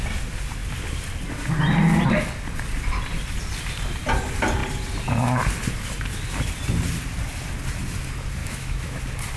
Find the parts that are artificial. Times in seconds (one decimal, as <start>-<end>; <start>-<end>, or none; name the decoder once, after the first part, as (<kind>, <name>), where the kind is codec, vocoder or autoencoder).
8.4-9.0 (autoencoder, DAC-VAE)